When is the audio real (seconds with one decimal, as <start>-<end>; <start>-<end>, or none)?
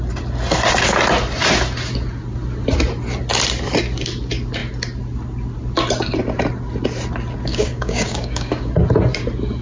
0.0-7.5; 8.7-9.6